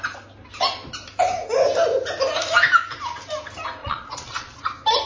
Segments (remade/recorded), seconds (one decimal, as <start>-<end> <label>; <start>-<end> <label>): 0.0-3.8 recorded; 3.8-4.6 remade; 4.6-5.1 recorded